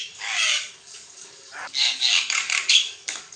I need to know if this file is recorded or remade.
remade